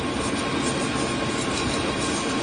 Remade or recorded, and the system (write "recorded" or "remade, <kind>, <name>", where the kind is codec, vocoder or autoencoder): recorded